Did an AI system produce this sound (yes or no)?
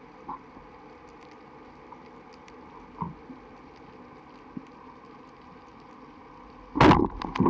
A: no